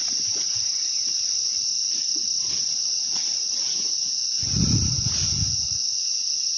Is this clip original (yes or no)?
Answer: yes